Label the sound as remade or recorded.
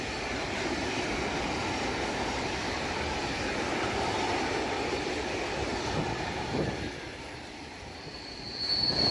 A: remade